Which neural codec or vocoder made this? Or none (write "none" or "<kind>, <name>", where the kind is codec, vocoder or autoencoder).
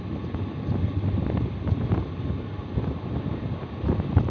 none